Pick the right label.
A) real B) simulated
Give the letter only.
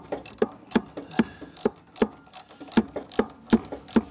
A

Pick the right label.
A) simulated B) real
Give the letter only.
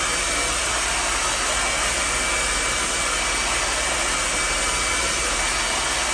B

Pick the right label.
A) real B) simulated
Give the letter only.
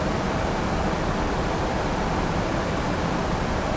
B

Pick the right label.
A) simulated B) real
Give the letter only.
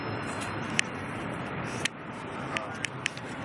A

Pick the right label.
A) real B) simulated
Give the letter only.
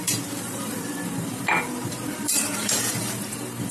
B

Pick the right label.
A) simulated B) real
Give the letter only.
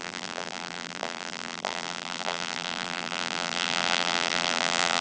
A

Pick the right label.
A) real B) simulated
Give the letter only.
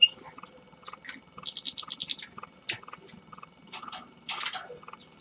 B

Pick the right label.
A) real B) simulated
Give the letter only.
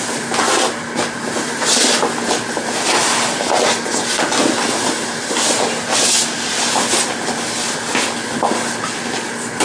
A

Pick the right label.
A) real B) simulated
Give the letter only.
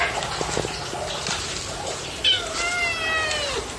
A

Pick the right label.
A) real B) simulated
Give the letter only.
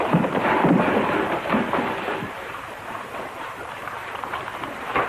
B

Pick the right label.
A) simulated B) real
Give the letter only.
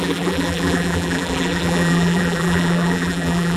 A